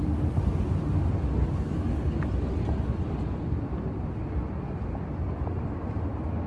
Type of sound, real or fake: real